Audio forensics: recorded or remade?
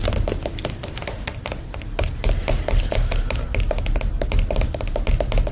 recorded